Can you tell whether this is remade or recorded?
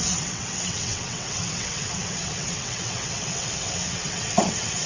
remade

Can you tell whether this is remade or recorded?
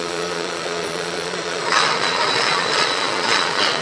remade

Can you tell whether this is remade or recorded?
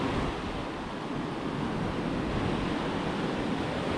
recorded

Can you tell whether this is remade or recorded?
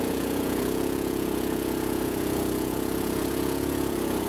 remade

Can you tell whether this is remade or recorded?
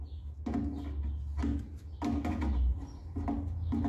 recorded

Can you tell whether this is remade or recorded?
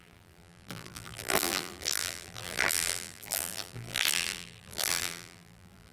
remade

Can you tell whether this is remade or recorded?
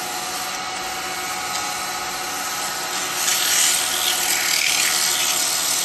recorded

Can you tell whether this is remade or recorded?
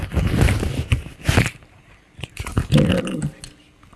recorded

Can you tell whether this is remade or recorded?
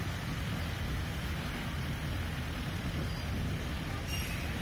recorded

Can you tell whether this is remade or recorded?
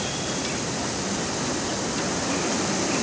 recorded